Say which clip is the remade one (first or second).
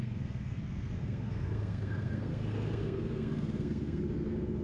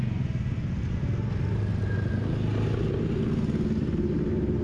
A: first